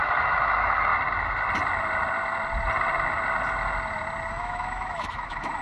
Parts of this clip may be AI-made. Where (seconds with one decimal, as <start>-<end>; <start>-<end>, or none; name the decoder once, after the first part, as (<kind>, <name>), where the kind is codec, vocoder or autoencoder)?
0.0-0.9 (autoencoder, DAC-VAE); 4.3-5.6